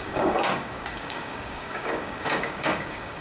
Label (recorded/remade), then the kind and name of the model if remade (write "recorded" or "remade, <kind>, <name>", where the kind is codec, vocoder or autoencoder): remade, codec, DAC